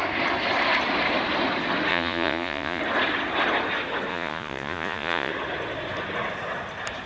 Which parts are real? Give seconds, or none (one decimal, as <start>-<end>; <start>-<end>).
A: 0.0-1.9; 2.8-4.1; 5.3-7.1